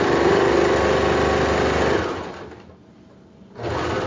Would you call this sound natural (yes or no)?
yes